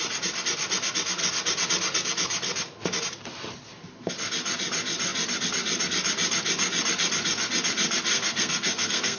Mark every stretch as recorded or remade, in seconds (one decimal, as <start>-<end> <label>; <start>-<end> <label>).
0.0-8.1 recorded; 8.1-9.2 remade